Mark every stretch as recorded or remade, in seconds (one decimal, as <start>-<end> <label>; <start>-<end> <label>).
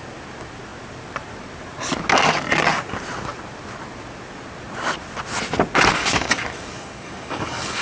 0.0-6.0 recorded; 6.0-7.8 remade